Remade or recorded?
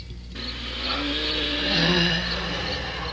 recorded